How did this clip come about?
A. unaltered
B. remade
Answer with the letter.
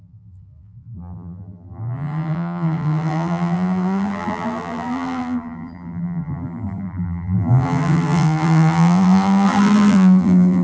B